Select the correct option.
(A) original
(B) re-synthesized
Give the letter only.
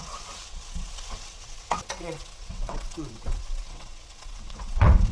B